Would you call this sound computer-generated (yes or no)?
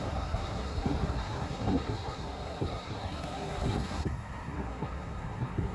yes